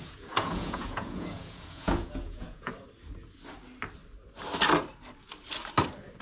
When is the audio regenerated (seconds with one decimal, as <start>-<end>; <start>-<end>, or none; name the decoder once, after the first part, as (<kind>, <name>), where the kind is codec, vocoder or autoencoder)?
0.0-2.7 (vocoder, Vocos)

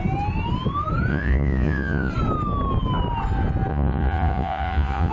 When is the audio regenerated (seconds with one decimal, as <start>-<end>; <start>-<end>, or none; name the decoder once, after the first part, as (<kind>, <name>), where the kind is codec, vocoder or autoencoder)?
1.1-2.1 (vocoder, Vocos); 3.7-5.1